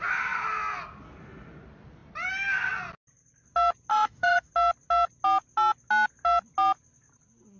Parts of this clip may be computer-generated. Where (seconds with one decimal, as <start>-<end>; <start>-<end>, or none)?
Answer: 3.9-4.5